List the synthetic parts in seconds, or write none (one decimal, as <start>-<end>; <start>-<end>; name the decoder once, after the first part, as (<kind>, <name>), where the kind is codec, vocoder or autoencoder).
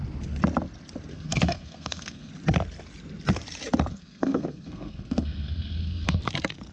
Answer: 1.1-2.3 (codec, SNAC); 3.9-6.2